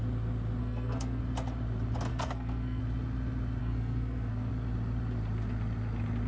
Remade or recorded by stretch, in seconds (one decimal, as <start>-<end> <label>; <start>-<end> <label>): 0.0-0.6 recorded; 0.6-1.2 remade; 1.2-2.1 recorded; 2.1-2.8 remade; 2.8-3.6 recorded; 3.6-4.5 remade; 4.5-6.3 recorded

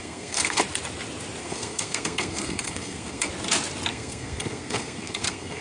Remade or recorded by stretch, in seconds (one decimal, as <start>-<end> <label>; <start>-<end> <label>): 0.0-0.6 remade; 0.6-1.4 recorded; 1.4-3.3 remade; 3.3-3.9 recorded; 3.9-5.6 remade

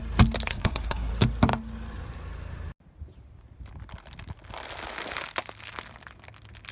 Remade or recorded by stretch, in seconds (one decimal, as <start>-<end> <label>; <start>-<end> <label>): 0.0-0.5 recorded; 0.5-1.1 remade; 1.1-6.7 recorded

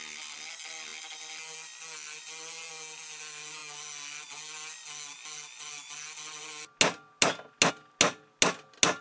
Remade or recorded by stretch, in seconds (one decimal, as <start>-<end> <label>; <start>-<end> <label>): 0.0-9.0 recorded

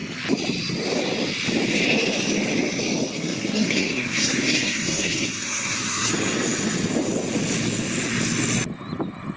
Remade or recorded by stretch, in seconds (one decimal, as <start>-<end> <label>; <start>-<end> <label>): 0.0-3.1 recorded; 3.1-6.1 remade; 6.1-9.4 recorded

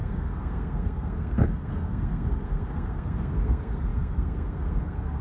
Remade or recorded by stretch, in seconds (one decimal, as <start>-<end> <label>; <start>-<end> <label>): 0.0-5.2 remade

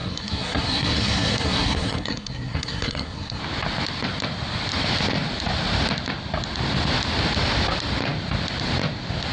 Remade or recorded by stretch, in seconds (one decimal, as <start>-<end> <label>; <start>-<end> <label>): 0.0-3.4 remade; 3.4-9.3 recorded

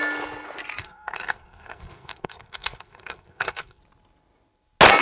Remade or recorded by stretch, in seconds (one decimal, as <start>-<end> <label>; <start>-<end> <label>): 0.0-0.8 recorded; 0.8-3.8 remade; 3.8-5.0 recorded